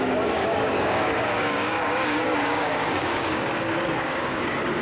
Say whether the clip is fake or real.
fake